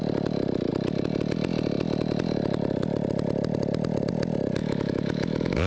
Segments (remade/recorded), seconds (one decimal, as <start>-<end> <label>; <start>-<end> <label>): 0.0-4.6 recorded; 4.6-5.7 remade